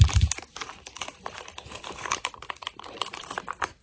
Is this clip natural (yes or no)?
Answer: no